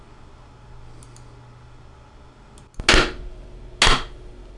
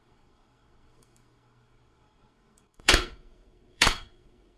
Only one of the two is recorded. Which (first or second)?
first